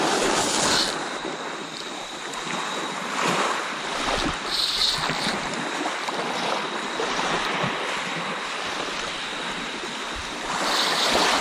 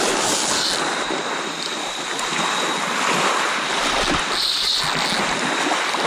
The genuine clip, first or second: second